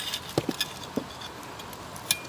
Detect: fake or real real